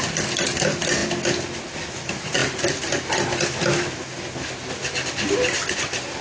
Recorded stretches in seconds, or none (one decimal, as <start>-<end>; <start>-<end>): 0.0-6.2